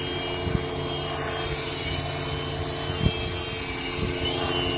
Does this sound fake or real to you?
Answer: real